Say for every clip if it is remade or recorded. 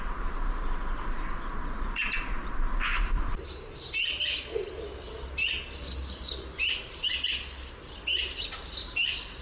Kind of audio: recorded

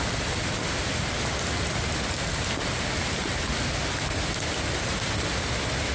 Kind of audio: recorded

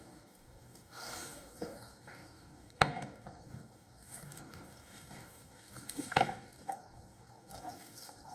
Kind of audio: remade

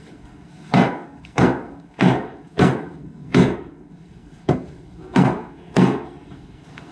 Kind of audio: remade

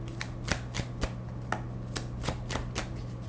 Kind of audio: recorded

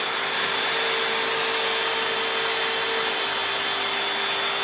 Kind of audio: recorded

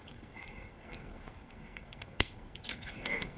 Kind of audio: remade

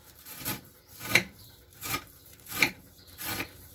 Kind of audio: remade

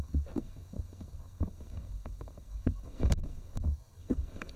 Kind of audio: remade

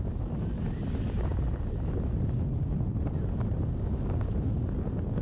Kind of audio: recorded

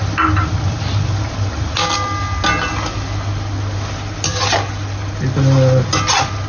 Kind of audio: recorded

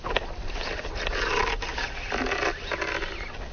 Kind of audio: recorded